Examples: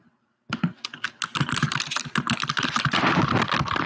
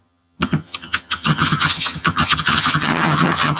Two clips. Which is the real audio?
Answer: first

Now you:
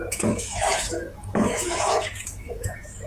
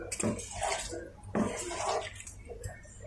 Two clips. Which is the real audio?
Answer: second